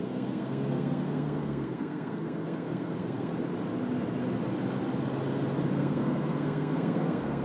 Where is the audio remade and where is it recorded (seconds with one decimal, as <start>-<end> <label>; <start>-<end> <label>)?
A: 0.0-3.3 remade; 3.3-5.7 recorded; 5.7-7.4 remade